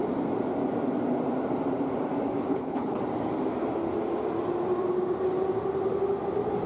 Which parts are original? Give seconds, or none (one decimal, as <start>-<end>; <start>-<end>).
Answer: 0.0-2.5; 3.0-6.7

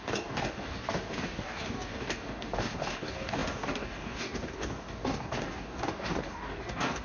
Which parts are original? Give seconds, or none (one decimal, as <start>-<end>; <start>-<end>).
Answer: none

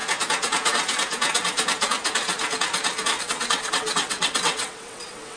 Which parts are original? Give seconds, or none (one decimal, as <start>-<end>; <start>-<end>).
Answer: 0.0-3.2

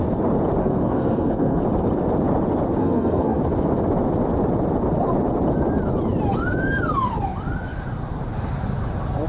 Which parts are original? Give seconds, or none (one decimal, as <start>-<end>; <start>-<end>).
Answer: 0.0-0.6; 1.6-2.8; 3.4-9.3

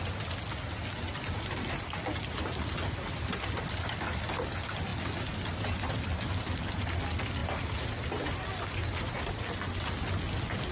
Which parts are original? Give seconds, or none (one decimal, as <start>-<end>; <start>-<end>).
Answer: 0.0-10.7